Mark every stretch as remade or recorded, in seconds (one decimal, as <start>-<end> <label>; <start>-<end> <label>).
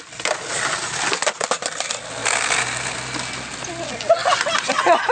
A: 0.0-5.1 recorded